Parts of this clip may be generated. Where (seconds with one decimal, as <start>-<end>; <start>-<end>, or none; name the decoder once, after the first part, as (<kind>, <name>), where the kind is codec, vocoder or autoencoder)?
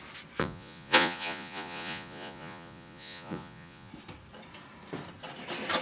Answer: 0.4-3.9 (vocoder, Vocos)